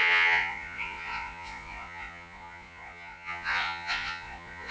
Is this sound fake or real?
fake